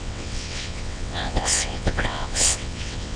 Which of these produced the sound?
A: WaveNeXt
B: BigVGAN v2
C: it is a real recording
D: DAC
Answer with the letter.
A